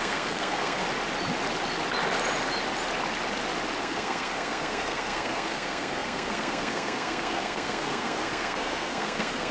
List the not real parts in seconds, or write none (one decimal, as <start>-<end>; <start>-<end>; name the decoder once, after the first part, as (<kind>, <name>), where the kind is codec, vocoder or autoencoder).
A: 0.0-0.8 (codec, SNAC); 3.8-9.5